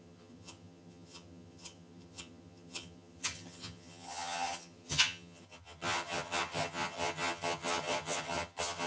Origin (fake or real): fake